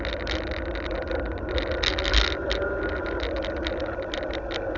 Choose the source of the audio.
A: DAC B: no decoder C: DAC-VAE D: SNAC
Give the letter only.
B